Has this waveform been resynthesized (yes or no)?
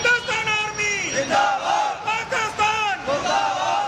no